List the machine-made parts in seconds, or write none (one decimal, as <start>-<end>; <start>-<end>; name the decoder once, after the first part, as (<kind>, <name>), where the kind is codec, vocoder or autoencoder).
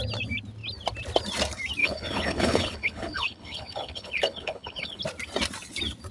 1.8-5.0 (codec, HILCodec)